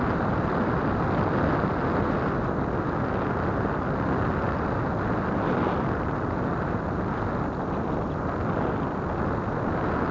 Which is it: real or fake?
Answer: real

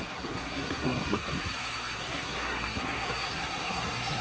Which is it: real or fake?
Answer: fake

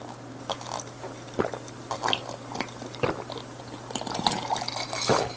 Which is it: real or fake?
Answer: real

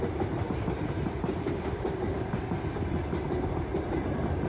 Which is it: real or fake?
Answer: fake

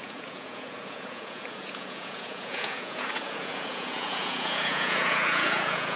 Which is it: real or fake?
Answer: fake